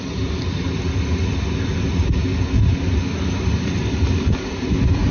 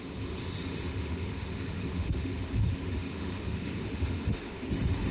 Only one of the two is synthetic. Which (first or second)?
second